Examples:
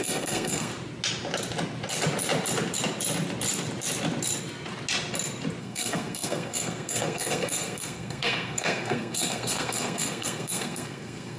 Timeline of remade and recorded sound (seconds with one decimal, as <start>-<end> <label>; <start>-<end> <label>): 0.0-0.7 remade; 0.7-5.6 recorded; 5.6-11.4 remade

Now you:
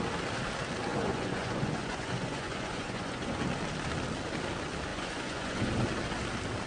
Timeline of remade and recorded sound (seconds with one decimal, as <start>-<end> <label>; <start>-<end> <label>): 0.0-0.9 recorded; 0.9-3.4 remade; 3.4-4.9 recorded; 4.9-5.7 remade; 5.7-6.7 recorded

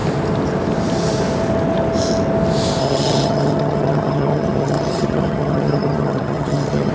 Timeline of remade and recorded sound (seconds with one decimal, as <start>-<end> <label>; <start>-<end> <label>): 0.0-2.8 recorded; 2.8-6.9 remade